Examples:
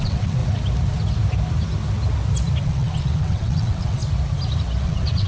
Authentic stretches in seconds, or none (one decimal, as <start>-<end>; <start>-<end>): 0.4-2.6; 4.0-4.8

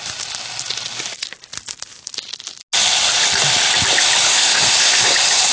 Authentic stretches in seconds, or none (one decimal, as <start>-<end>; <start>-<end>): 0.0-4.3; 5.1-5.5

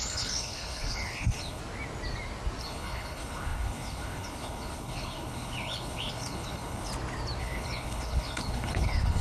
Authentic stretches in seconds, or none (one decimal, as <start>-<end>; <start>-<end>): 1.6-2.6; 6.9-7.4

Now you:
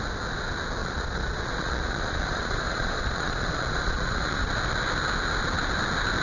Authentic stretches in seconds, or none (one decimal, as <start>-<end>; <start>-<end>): 0.0-0.8; 4.5-6.2

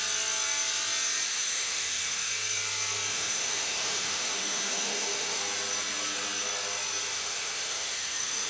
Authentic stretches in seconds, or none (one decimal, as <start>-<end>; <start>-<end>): 0.0-1.3; 2.3-3.1; 5.4-7.1

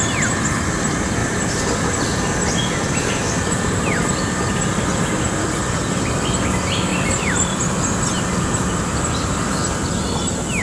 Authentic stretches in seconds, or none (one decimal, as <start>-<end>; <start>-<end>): 0.0-10.6

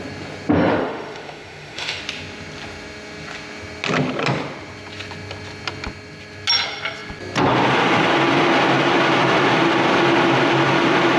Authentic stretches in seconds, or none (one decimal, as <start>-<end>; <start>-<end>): 0.0-0.7; 2.0-11.2

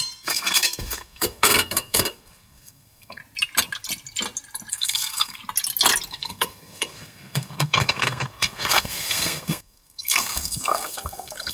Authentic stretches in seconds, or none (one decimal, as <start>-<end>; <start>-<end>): 3.2-4.7; 5.4-6.1